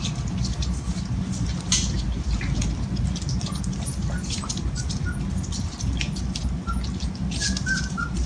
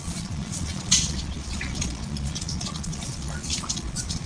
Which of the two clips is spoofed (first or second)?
second